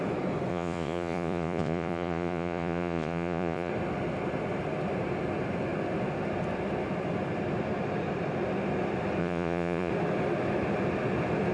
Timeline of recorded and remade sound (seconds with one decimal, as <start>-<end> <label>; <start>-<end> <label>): 0.0-0.5 recorded; 0.5-3.7 remade; 3.7-9.2 recorded; 9.2-9.9 remade; 9.9-11.5 recorded